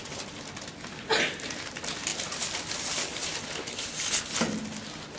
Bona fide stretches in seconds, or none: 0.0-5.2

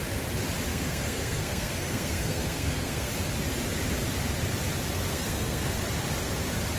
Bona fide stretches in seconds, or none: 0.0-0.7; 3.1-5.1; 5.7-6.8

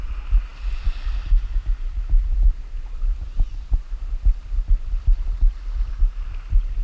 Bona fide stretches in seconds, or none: 0.0-6.8

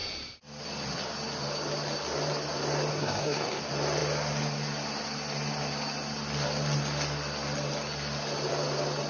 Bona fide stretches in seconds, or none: 0.0-2.9; 3.6-9.1